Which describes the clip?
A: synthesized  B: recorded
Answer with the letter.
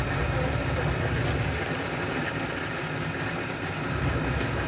B